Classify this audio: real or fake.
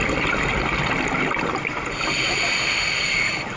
real